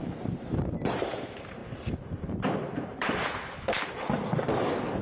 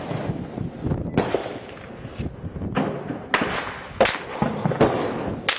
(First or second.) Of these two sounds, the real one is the second